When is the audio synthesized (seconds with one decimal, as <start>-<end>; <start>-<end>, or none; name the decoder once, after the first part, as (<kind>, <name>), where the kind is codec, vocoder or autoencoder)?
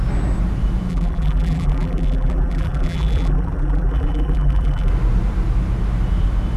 0.9-4.9 (vocoder, BigVGAN v2)